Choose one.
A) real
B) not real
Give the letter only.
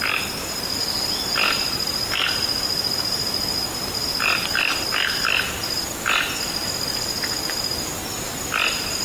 A